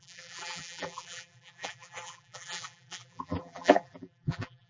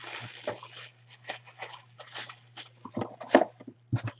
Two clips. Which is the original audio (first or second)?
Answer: second